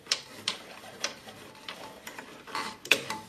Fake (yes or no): yes